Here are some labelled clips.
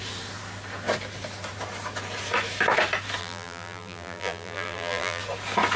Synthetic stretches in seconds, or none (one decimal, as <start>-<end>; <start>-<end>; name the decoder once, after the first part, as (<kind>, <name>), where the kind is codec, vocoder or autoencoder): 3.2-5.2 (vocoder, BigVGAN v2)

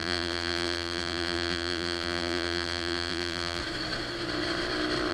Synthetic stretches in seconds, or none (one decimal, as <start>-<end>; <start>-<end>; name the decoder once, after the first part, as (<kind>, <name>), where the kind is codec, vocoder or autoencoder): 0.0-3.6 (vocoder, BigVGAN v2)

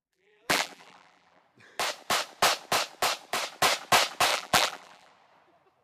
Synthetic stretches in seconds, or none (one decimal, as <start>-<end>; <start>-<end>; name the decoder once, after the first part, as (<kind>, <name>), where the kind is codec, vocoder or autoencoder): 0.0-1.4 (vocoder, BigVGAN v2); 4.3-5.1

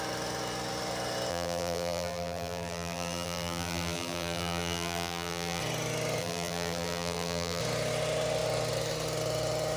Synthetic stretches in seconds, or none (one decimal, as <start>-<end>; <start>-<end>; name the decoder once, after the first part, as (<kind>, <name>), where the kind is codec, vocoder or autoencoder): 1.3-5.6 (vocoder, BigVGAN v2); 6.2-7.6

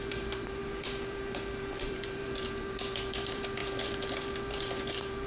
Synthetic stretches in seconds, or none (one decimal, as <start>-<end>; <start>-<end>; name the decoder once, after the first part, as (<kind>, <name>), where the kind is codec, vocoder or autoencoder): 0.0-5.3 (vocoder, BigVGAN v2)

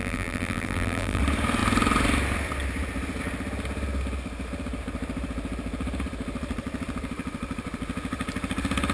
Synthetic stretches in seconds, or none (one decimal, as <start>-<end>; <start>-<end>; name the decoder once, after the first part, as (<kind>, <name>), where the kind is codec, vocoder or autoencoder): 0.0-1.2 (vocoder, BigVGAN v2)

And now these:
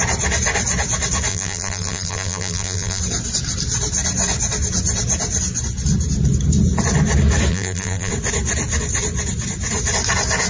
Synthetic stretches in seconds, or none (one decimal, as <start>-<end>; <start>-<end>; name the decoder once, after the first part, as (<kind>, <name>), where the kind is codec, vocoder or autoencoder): 1.3-3.0 (vocoder, BigVGAN v2); 7.5-8.1